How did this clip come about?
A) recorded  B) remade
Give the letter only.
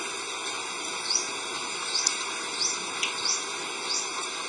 A